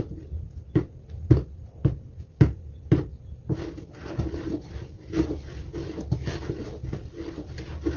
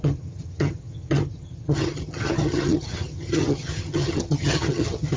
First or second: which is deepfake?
second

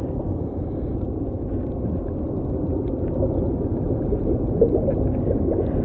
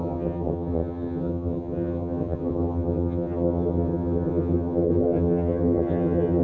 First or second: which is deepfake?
second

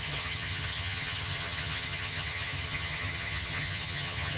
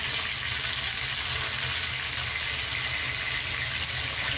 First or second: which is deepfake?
first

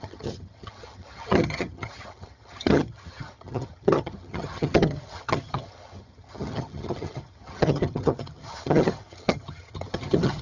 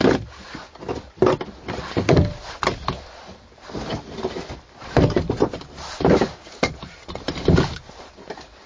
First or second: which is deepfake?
first